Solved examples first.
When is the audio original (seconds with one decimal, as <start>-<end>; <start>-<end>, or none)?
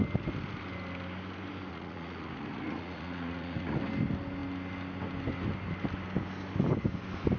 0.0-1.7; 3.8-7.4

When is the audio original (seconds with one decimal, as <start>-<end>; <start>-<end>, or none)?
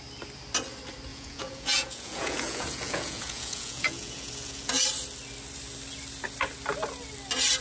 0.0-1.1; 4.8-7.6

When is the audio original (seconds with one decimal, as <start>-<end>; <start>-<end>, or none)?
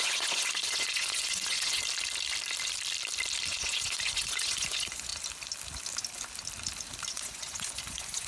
1.8-3.5; 5.1-7.1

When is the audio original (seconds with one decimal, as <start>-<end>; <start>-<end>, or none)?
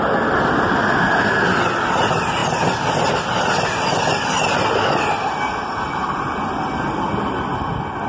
0.0-8.1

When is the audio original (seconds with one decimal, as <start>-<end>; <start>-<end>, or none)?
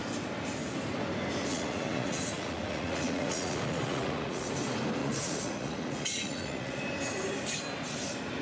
0.0-1.5; 4.5-5.0; 6.8-8.4